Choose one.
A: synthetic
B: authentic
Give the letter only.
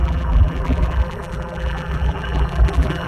A